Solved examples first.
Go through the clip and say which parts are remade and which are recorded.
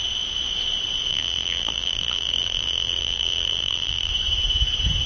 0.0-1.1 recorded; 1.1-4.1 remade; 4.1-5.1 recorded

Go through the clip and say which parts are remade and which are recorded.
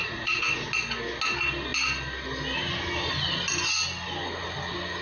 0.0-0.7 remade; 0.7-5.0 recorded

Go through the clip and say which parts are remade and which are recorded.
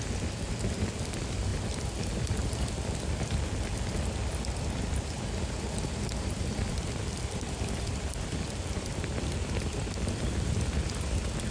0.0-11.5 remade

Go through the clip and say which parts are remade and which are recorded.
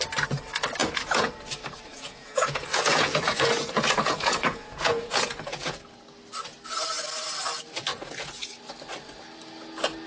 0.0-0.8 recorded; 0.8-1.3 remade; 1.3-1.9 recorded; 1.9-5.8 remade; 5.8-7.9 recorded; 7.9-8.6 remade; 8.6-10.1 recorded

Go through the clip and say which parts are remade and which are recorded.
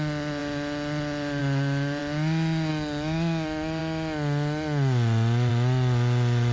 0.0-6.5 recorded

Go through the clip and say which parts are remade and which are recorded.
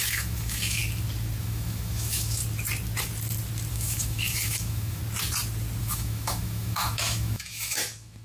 0.0-0.8 remade; 0.8-1.4 recorded; 1.4-2.4 remade; 2.4-3.7 recorded; 3.7-5.0 remade; 5.0-5.8 recorded; 5.8-8.2 remade